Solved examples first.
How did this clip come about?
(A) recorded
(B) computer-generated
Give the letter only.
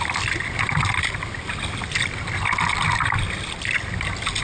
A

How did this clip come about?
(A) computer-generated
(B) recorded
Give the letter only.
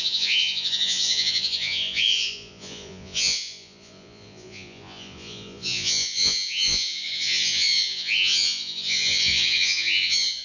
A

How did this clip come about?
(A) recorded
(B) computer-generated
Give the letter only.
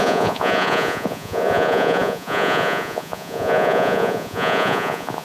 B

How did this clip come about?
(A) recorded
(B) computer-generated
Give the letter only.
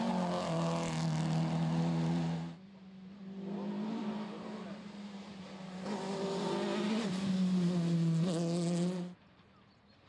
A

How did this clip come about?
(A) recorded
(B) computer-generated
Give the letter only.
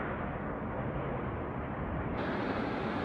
A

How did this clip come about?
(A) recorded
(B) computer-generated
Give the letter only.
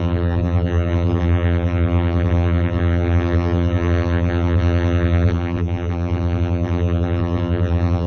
B